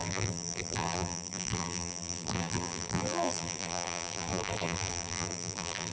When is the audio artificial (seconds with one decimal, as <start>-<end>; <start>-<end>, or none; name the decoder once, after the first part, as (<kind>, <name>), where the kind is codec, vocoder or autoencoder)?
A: 0.0-5.9 (vocoder, BigVGAN v2)